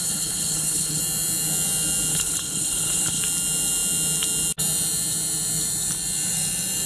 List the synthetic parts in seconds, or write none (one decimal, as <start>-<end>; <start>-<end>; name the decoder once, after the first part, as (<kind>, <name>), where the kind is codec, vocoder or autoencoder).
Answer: 0.0-1.0 (codec, HILCodec); 2.1-3.2